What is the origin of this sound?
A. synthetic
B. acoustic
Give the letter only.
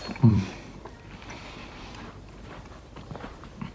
A